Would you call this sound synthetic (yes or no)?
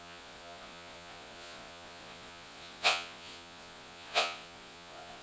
yes